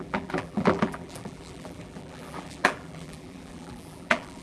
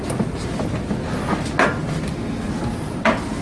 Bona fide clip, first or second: second